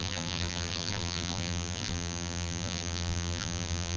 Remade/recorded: remade